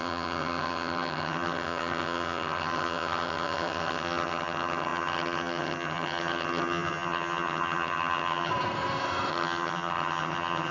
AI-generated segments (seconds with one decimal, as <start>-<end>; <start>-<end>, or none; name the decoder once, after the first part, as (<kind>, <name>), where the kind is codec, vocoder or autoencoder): 0.0-8.5 (vocoder, HiFi-GAN); 9.3-10.7